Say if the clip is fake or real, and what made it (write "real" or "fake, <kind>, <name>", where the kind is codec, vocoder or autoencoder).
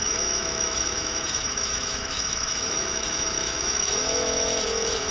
fake, autoencoder, DAC-VAE